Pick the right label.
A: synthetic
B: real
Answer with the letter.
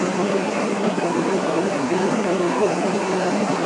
A